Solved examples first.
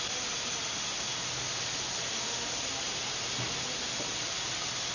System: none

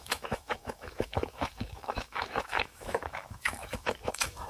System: autoencoder, DAC-VAE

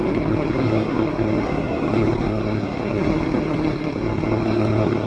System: codec, SNAC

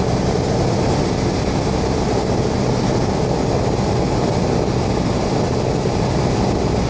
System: none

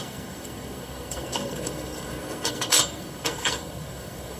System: codec, SNAC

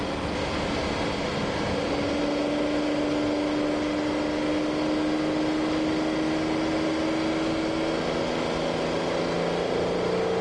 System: none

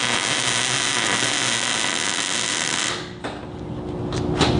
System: none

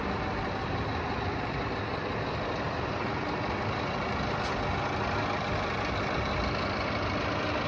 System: none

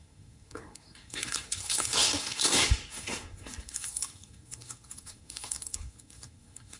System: codec, SNAC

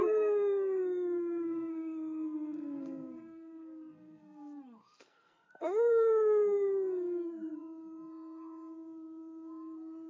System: codec, SNAC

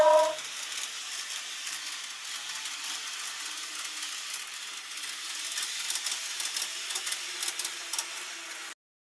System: none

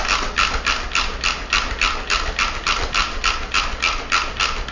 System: none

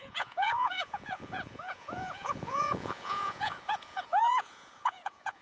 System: vocoder, Vocos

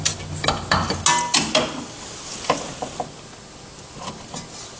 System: none